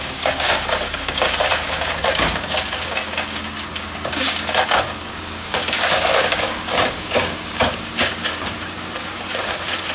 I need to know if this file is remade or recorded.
remade